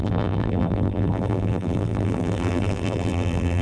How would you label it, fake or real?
fake